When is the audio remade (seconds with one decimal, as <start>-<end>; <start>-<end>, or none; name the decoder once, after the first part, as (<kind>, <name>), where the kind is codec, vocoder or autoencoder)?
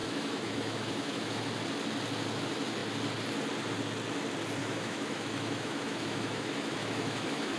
0.0-1.4 (autoencoder, DAC-VAE); 4.6-7.6